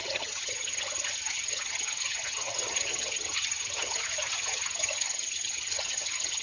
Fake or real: fake